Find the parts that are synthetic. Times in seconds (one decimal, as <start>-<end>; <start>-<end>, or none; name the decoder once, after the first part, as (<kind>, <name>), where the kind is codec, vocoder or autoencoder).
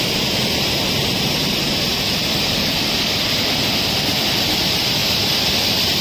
1.9-4.2 (vocoder, BigVGAN v2)